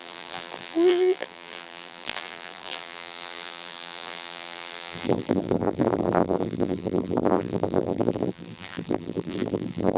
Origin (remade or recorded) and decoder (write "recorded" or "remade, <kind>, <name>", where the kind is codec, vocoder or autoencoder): remade, vocoder, BigVGAN v2